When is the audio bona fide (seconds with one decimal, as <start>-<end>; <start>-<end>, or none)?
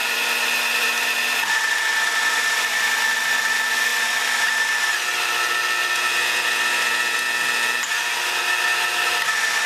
0.0-9.7